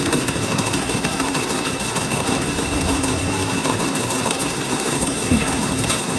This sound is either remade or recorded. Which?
remade